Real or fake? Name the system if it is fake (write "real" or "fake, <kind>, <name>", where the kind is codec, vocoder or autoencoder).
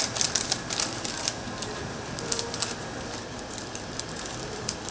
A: fake, vocoder, BigVGAN v2